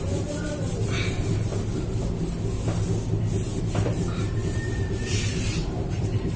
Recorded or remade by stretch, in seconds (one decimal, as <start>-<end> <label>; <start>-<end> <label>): 0.0-1.5 remade; 1.5-3.6 recorded; 3.6-6.4 remade